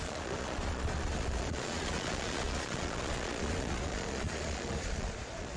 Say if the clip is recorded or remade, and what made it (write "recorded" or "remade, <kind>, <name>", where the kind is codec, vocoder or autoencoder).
remade, vocoder, Vocos